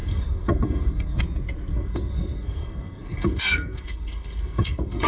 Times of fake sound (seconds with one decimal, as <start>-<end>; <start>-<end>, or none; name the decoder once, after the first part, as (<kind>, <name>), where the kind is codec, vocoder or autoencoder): 0.0-1.2 (codec, SNAC); 1.7-5.1